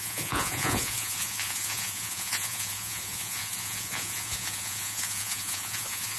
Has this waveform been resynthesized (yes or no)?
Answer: yes